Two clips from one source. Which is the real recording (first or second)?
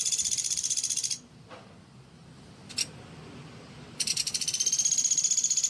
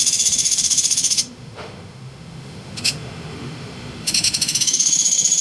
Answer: first